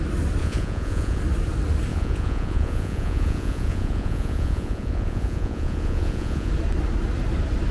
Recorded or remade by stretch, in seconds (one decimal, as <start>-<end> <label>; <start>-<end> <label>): 0.0-0.4 recorded; 0.4-1.2 remade; 1.2-1.9 recorded; 1.9-6.5 remade; 6.5-7.7 recorded